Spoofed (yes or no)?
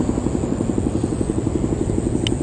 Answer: no